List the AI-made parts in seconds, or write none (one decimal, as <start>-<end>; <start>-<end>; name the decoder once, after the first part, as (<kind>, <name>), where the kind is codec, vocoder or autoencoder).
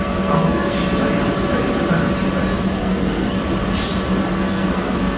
0.0-0.8 (codec, SNAC); 2.8-3.4; 4.3-5.2